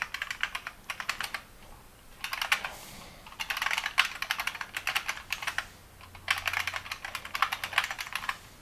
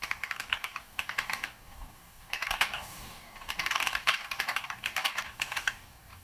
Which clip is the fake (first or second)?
second